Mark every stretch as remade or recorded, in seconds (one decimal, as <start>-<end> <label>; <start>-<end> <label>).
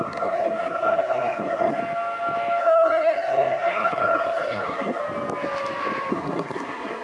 0.0-1.8 remade; 1.8-2.6 recorded; 2.6-5.0 remade; 5.0-6.1 recorded; 6.1-7.0 remade